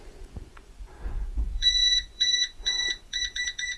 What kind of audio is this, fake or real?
fake